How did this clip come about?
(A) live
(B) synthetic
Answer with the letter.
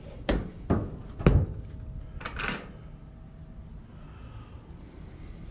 A